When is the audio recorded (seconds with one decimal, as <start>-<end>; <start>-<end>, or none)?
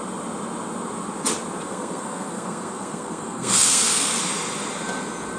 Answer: 0.0-1.7; 4.2-5.4